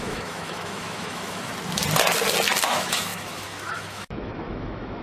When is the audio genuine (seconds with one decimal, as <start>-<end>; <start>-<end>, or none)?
1.5-2.7